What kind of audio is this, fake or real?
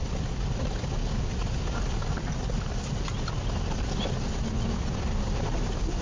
real